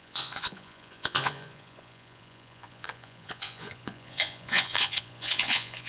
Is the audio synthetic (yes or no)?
yes